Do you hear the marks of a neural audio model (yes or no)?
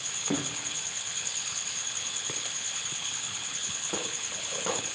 yes